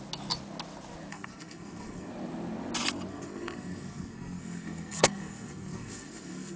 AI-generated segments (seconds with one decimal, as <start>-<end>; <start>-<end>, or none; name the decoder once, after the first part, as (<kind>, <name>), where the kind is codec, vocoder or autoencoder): 1.1-2.1 (codec, SNAC); 3.1-6.6